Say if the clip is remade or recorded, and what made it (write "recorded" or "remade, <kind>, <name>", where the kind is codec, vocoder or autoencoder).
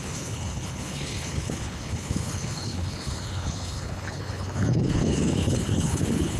remade, codec, HILCodec